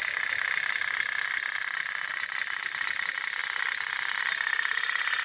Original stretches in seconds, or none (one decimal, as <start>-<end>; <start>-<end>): 0.0-5.2